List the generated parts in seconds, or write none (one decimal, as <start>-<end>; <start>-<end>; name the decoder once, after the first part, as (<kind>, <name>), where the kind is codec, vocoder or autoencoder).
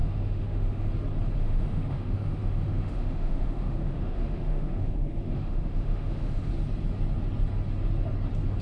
0.0-0.9 (autoencoder, DAC-VAE); 1.4-6.5